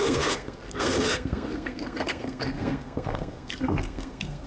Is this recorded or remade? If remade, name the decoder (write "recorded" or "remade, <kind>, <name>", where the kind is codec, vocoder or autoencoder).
remade, codec, SNAC